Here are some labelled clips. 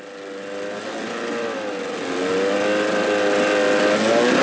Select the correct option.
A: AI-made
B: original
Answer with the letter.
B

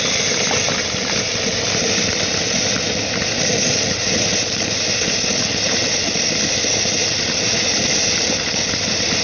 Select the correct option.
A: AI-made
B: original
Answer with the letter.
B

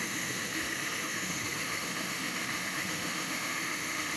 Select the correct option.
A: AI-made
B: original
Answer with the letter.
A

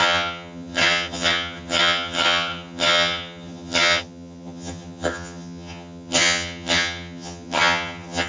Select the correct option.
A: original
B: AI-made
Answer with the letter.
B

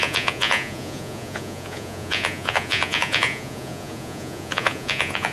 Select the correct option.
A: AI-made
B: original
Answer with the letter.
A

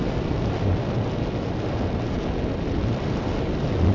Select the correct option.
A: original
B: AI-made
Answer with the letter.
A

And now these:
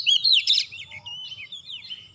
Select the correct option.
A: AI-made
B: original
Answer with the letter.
A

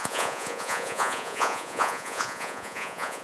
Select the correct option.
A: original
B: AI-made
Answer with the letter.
B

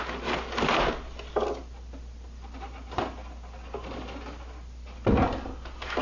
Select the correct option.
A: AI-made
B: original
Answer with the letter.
B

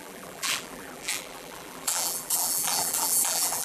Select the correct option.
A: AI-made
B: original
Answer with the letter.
A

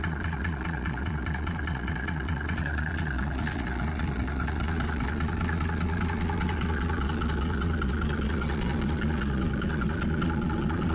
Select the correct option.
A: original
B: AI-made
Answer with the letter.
B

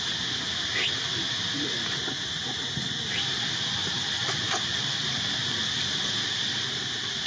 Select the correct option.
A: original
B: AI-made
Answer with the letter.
A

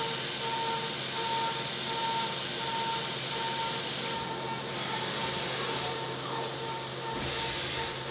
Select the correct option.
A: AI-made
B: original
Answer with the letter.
B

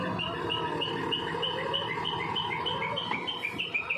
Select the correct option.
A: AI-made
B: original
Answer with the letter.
B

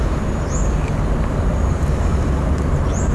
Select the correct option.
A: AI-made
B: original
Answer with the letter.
B